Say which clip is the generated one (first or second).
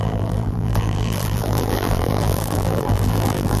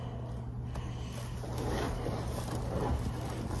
first